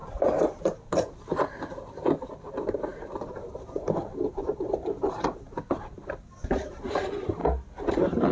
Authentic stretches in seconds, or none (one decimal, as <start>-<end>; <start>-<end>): 0.0-1.1; 7.4-7.9